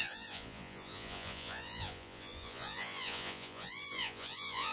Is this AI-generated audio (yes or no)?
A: yes